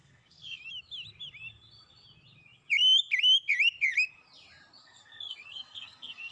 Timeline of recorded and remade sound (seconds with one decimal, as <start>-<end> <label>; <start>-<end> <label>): 0.0-0.6 remade; 0.6-4.8 recorded; 4.8-6.3 remade